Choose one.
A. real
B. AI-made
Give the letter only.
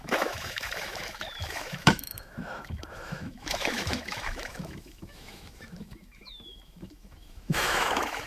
B